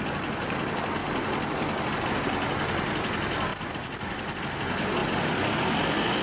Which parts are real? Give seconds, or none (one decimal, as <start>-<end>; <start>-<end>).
0.0-1.0; 1.9-3.5; 4.4-6.2